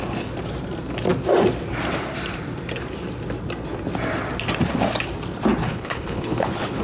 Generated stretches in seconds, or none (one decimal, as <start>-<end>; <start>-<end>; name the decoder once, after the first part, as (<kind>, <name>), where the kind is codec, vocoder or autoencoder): 5.6-6.8 (codec, HILCodec)